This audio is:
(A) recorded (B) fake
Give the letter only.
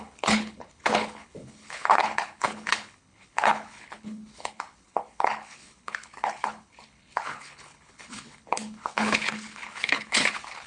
B